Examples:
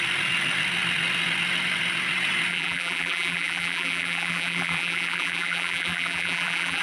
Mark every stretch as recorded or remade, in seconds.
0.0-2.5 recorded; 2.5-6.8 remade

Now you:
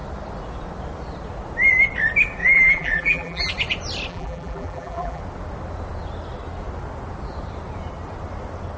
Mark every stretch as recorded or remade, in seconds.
0.0-2.4 recorded; 2.4-3.5 remade; 3.5-4.1 recorded; 4.1-5.2 remade; 5.2-8.8 recorded

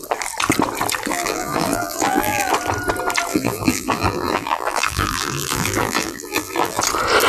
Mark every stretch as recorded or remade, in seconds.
0.0-1.1 recorded; 1.1-2.5 remade; 2.5-3.3 recorded; 3.3-6.8 remade; 6.8-7.3 recorded

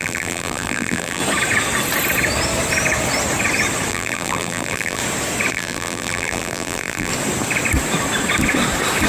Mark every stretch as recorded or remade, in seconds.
0.0-1.2 remade; 1.2-3.9 recorded; 3.9-5.0 remade; 5.0-5.5 recorded; 5.5-7.1 remade; 7.1-9.1 recorded

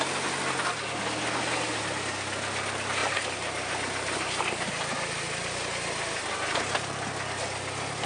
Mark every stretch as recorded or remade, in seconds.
0.0-3.0 recorded; 3.0-6.6 remade; 6.6-8.1 recorded

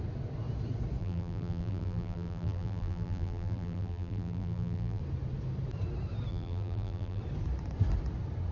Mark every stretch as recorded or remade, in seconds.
0.0-1.0 recorded; 1.0-5.0 remade; 5.0-6.3 recorded; 6.3-7.2 remade; 7.2-8.5 recorded

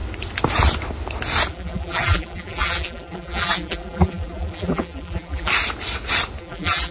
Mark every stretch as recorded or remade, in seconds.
0.0-1.5 recorded; 1.5-5.5 remade; 5.5-6.4 recorded; 6.4-6.9 remade